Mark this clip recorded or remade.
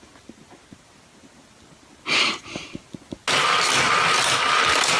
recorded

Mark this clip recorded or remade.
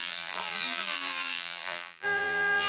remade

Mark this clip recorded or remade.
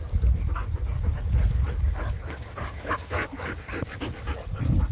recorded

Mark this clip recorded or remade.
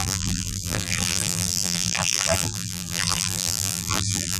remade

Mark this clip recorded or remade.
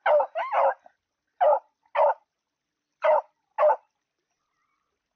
recorded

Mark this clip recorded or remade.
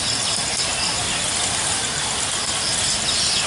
recorded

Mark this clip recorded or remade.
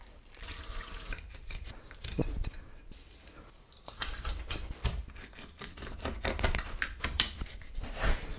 remade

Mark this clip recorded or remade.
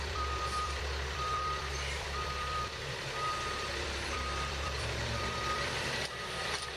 remade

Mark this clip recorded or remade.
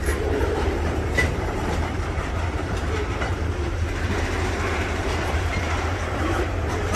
remade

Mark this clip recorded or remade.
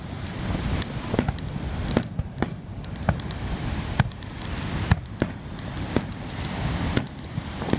remade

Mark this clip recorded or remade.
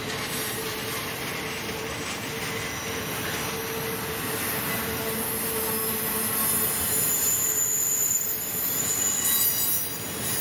recorded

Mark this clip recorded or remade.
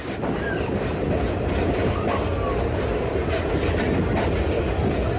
recorded